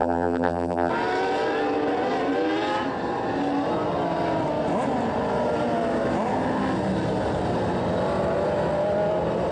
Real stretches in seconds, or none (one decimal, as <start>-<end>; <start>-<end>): 0.9-9.5